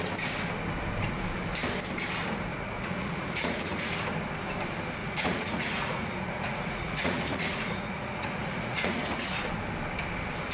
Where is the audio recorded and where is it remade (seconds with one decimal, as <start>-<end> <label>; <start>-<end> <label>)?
0.0-2.5 recorded; 2.5-3.9 remade; 3.9-5.0 recorded; 5.0-9.4 remade; 9.4-10.5 recorded